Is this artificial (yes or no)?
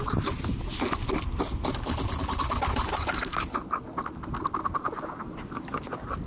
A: no